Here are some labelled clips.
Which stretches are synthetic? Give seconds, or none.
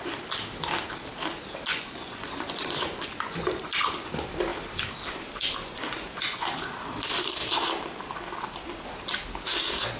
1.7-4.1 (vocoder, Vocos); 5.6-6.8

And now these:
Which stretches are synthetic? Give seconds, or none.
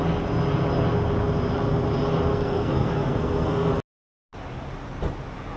2.3-3.7 (codec, SNAC)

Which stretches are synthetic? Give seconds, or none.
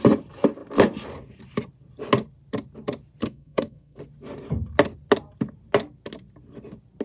3.2-4.0 (codec, SNAC)